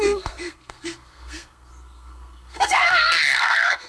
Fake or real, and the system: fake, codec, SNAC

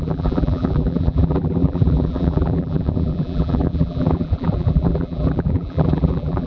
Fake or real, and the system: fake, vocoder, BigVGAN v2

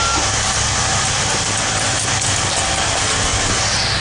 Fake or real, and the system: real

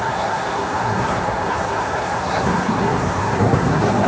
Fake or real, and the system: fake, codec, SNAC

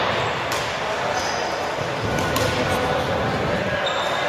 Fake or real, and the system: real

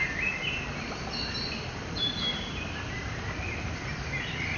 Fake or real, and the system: real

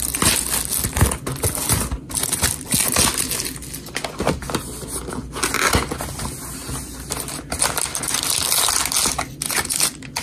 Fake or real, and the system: real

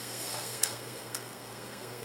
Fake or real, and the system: fake, codec, SNAC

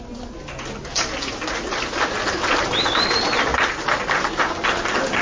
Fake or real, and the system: real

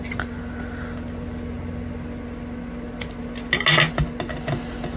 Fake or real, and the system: real